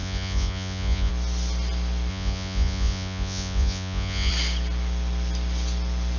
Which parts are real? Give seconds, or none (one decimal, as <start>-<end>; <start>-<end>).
1.1-2.1; 4.3-6.2